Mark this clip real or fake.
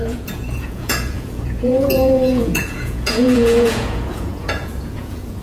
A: fake